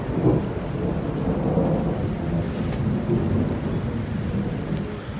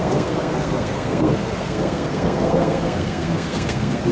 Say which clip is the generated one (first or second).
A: second